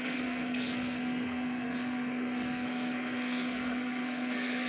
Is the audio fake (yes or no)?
yes